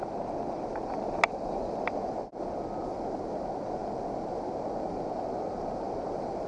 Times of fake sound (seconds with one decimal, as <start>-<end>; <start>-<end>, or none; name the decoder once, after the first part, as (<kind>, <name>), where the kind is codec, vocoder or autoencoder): none